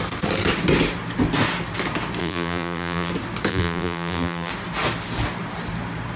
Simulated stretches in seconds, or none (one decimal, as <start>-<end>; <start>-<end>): 2.2-3.1; 3.5-4.5